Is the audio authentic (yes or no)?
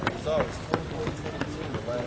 yes